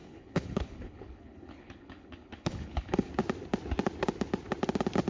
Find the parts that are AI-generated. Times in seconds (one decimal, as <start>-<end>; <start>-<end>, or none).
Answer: 0.0-3.1